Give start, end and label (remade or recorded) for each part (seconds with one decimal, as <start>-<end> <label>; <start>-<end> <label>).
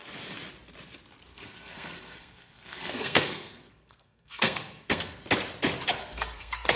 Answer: 0.0-1.3 recorded; 1.3-5.3 remade; 5.3-6.0 recorded; 6.0-6.8 remade